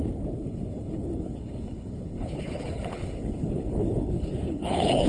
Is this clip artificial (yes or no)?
yes